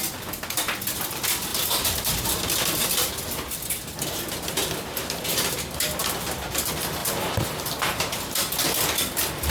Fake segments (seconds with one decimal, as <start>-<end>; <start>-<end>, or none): 1.5-3.1; 6.0-6.5